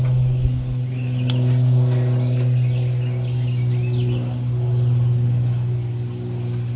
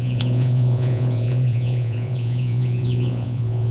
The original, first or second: first